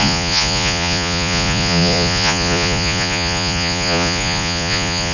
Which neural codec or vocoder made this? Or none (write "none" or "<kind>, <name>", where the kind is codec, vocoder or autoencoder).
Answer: vocoder, Vocos